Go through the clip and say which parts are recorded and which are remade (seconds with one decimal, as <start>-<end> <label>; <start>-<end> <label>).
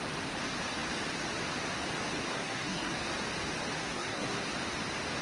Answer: 0.0-2.3 recorded; 2.3-2.9 remade; 2.9-3.8 recorded; 3.8-4.5 remade; 4.5-5.2 recorded